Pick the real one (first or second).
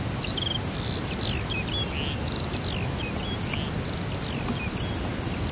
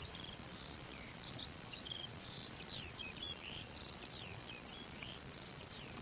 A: first